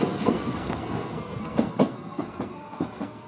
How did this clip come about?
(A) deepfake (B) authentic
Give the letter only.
A